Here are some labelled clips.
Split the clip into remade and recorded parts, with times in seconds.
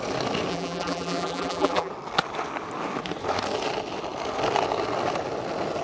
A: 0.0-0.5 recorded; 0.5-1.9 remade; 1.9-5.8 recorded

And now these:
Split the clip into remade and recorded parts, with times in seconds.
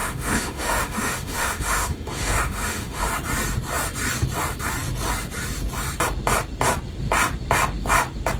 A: 0.0-3.1 remade; 3.1-8.4 recorded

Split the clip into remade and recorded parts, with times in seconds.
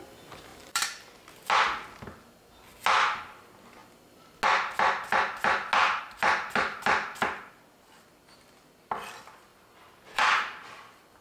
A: 0.0-0.5 recorded; 0.5-1.2 remade; 1.2-9.5 recorded; 9.5-10.3 remade; 10.3-11.2 recorded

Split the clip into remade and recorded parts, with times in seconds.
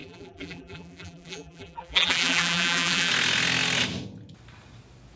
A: 0.0-3.1 remade; 3.1-5.2 recorded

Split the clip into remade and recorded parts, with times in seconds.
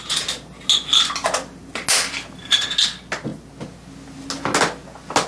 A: 0.0-5.3 recorded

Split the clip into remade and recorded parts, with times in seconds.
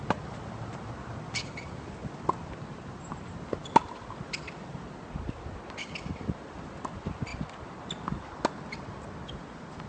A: 0.0-9.9 recorded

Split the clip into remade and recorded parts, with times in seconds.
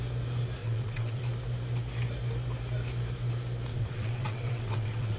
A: 0.0-0.6 recorded; 0.6-1.2 remade; 1.2-3.7 recorded; 3.7-5.2 remade